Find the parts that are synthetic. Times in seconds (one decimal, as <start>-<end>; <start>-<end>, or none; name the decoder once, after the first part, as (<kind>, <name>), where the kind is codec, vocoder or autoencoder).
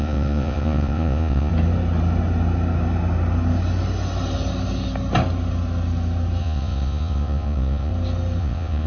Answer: 0.0-1.5 (vocoder, Vocos); 6.4-7.9; 8.4-8.9